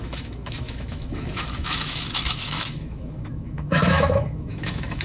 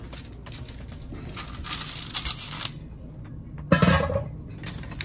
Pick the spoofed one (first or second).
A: first